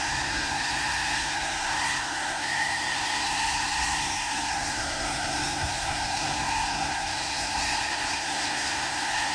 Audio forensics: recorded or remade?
remade